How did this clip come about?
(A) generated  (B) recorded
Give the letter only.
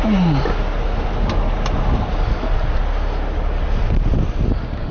B